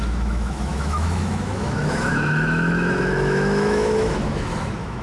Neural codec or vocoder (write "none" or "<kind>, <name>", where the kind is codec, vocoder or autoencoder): autoencoder, DAC-VAE